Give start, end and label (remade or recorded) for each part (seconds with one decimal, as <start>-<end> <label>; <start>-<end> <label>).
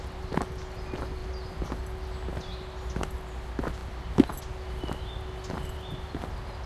0.0-6.7 recorded